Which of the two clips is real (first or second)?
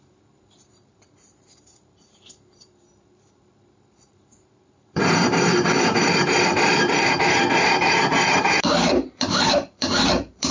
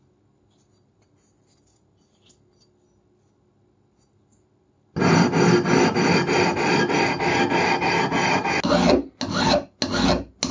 second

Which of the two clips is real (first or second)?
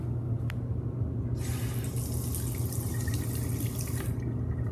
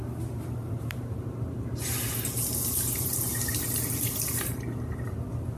first